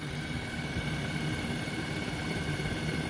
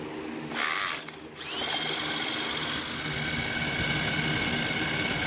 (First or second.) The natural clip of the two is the second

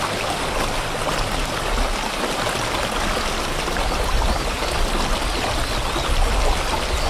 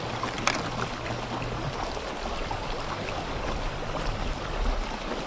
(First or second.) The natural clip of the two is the first